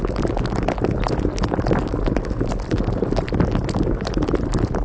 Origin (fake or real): real